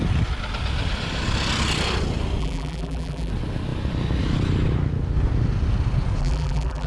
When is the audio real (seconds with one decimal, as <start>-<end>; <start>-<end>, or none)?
0.0-2.4; 3.3-6.2